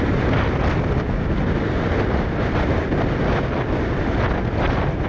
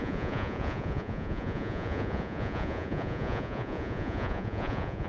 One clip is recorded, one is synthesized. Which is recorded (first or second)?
first